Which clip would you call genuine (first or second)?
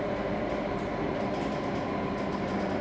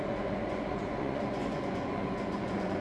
first